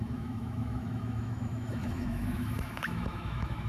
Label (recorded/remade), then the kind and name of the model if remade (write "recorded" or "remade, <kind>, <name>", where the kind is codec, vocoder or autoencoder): remade, autoencoder, DAC-VAE